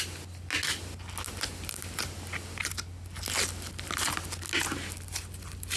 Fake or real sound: real